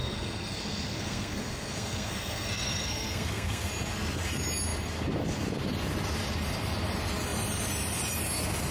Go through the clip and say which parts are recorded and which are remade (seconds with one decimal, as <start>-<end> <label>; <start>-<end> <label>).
0.0-3.7 remade; 3.7-8.7 recorded